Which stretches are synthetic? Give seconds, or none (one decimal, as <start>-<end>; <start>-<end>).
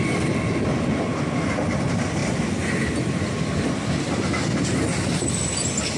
none